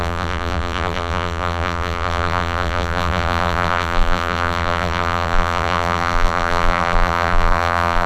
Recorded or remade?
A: remade